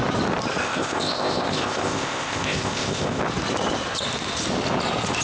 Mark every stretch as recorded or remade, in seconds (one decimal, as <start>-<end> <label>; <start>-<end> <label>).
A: 0.0-0.6 recorded; 0.6-3.2 remade; 3.2-5.2 recorded